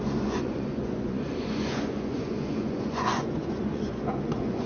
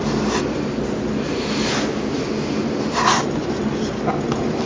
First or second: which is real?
second